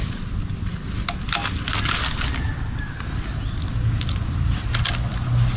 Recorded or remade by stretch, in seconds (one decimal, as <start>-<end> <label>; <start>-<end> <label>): 0.0-5.6 recorded